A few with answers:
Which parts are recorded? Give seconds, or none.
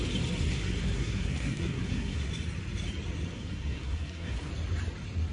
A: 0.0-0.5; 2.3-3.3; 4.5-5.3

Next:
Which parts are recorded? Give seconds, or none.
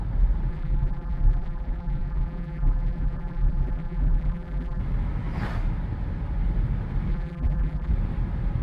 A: 0.0-0.5; 4.8-7.1; 7.9-8.6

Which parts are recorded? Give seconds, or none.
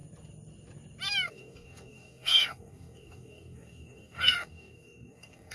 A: 0.0-1.3